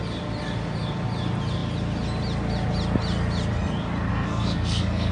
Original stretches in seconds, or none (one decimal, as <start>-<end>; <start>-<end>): 0.0-4.1